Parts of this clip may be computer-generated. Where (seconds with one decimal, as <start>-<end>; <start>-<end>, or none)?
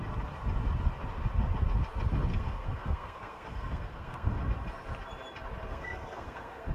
2.3-4.4; 5.7-6.7